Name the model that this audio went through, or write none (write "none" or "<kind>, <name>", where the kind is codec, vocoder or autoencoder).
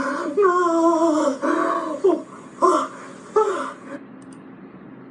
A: none